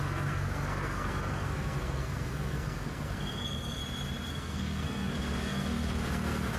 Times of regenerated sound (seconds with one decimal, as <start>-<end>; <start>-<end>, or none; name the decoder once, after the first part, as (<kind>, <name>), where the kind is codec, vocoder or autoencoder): 0.0-3.8 (codec, SNAC); 4.3-6.6